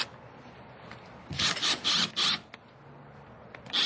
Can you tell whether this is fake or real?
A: real